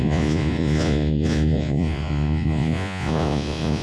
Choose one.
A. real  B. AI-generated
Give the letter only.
B